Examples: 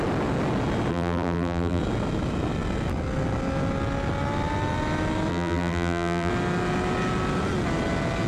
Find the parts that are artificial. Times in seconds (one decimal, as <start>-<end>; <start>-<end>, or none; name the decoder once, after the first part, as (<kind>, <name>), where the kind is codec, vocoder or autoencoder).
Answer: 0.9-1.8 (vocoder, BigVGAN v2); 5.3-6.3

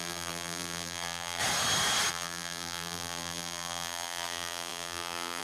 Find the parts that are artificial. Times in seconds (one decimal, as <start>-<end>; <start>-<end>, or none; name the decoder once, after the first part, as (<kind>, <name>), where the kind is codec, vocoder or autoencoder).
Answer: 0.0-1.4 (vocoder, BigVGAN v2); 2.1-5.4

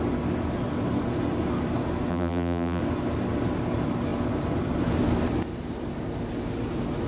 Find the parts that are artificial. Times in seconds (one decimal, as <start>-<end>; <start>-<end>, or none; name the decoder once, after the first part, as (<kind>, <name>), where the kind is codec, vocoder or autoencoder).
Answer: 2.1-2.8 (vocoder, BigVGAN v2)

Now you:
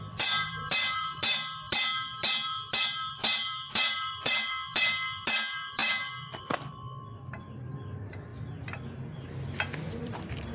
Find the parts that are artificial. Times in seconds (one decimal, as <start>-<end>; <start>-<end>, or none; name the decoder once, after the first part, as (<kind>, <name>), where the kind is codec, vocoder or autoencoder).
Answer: 0.0-8.3 (vocoder, BigVGAN v2); 10.0-10.5

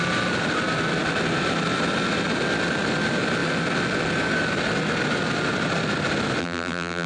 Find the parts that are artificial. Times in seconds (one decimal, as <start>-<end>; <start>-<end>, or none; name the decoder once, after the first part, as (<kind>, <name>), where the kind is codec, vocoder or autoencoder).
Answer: 6.4-7.1 (vocoder, BigVGAN v2)

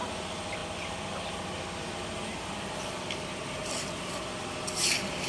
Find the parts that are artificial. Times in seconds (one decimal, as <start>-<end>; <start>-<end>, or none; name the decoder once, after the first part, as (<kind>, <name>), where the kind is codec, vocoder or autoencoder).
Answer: 0.0-0.6 (vocoder, BigVGAN v2); 3.8-5.3

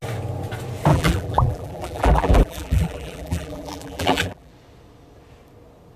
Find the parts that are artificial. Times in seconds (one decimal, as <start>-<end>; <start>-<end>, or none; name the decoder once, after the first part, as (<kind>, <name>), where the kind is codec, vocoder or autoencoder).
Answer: 0.9-4.5 (vocoder, BigVGAN v2)